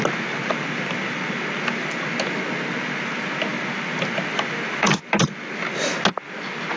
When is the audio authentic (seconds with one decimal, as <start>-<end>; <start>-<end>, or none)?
0.0-6.8